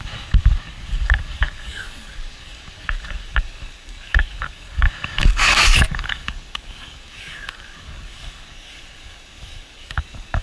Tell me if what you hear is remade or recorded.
remade